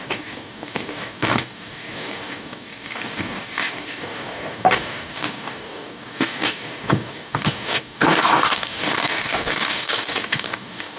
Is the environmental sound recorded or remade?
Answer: remade